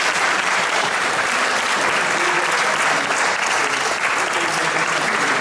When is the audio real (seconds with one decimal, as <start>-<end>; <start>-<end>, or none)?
1.5-4.6